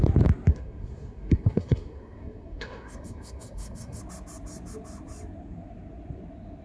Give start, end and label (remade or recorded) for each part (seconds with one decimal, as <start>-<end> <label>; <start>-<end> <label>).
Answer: 0.0-0.5 recorded; 0.5-4.0 remade; 4.0-6.6 recorded